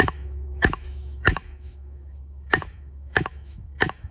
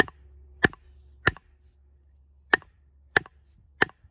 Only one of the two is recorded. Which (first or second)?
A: second